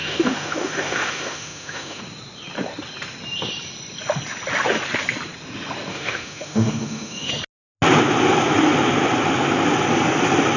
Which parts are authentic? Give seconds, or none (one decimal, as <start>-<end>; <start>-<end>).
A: 2.0-5.9; 7.3-10.6